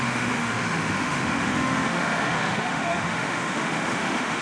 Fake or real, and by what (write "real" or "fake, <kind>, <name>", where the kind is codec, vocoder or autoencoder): fake, autoencoder, DAC-VAE